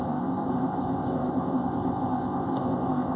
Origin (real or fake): fake